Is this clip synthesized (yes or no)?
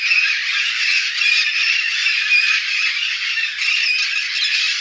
no